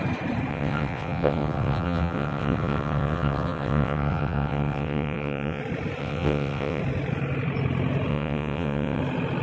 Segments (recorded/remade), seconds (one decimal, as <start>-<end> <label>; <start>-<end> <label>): 0.0-0.5 recorded; 0.5-5.6 remade; 5.6-6.0 recorded; 6.0-6.8 remade; 6.8-8.1 recorded; 8.1-9.0 remade; 9.0-9.4 recorded